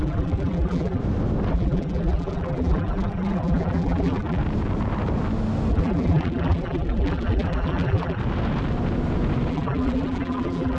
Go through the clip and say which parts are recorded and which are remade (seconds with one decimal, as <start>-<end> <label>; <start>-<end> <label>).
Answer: 0.0-1.0 remade; 1.0-1.5 recorded; 1.5-4.4 remade; 4.4-5.7 recorded; 5.7-8.2 remade; 8.2-9.5 recorded; 9.5-10.8 remade